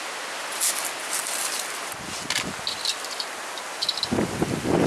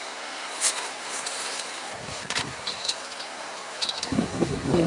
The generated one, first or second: second